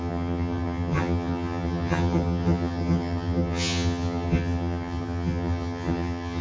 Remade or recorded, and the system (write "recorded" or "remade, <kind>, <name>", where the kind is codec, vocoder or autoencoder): remade, vocoder, HiFi-GAN